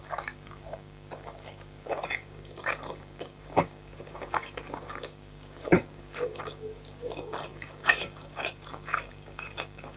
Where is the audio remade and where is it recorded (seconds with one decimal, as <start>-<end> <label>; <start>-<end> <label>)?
0.0-10.0 remade